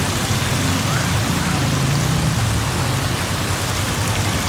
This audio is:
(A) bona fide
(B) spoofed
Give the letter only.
A